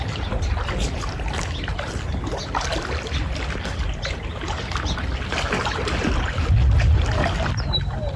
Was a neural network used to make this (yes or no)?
no